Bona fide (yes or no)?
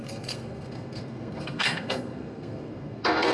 no